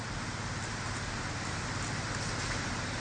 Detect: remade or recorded recorded